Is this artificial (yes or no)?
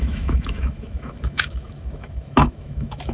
yes